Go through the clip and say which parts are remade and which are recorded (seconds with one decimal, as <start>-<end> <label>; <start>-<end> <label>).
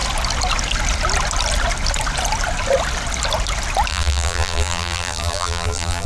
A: 0.0-3.9 recorded; 3.9-6.1 remade